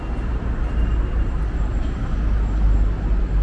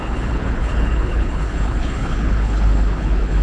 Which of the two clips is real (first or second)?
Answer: first